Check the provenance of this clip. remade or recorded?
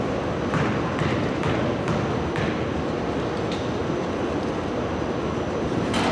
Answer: recorded